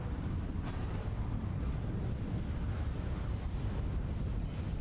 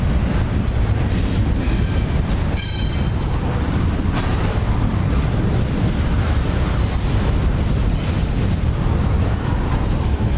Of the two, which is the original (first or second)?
first